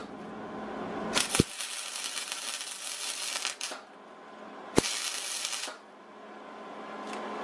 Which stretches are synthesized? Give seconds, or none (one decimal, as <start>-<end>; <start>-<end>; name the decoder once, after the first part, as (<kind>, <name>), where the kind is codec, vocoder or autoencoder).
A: none